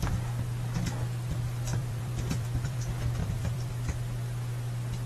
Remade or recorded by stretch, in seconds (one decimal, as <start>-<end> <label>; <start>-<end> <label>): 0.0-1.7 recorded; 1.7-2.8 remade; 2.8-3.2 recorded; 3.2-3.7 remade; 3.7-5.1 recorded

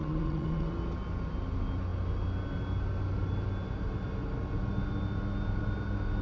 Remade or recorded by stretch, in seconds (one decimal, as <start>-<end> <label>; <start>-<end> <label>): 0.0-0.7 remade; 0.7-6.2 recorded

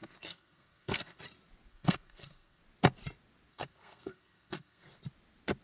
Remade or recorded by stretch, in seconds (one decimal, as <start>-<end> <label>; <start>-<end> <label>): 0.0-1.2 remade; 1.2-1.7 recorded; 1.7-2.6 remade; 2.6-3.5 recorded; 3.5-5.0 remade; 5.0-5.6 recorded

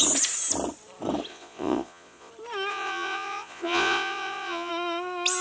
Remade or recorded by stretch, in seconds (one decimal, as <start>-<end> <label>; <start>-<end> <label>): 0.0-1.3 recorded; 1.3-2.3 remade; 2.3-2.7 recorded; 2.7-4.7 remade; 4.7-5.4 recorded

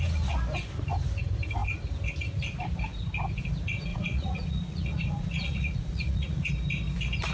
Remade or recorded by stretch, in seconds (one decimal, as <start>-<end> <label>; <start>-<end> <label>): 0.0-3.9 recorded; 3.9-6.5 remade; 6.5-7.3 recorded

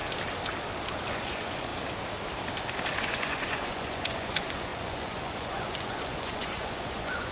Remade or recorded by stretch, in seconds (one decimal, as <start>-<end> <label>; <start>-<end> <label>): 0.0-1.1 recorded; 1.1-1.7 remade; 1.7-3.0 recorded; 3.0-7.3 remade

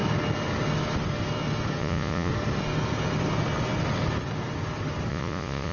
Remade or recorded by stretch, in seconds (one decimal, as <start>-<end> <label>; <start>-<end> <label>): 0.0-1.8 recorded; 1.8-2.3 remade; 2.3-5.1 recorded; 5.1-5.7 remade